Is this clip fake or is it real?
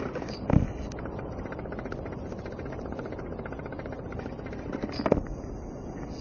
real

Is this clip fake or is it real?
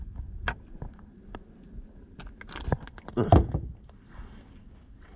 real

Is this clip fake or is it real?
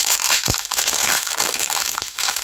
fake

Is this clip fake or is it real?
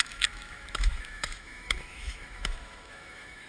fake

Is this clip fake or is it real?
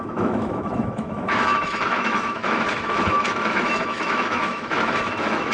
fake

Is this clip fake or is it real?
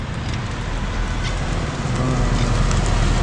real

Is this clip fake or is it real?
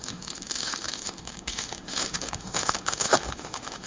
fake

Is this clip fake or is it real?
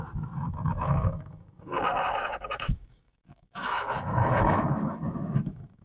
fake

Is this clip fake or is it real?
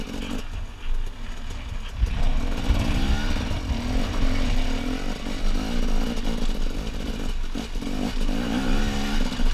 real